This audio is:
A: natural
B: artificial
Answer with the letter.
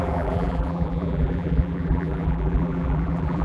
B